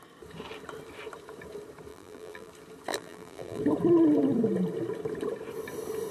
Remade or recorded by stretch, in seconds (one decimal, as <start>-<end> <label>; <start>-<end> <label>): 0.0-1.9 recorded; 1.9-2.5 remade; 2.5-2.9 recorded; 2.9-3.6 remade; 3.6-6.1 recorded